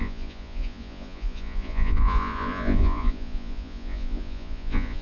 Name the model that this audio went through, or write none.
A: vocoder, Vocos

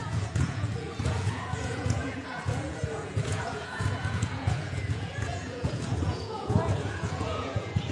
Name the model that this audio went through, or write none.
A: vocoder, Vocos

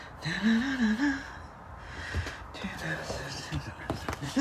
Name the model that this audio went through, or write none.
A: none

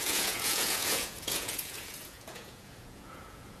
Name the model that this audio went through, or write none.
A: vocoder, Vocos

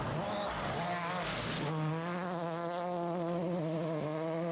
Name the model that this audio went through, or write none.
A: none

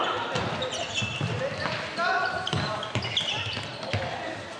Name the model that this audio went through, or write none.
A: none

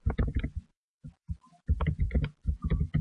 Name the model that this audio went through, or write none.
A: none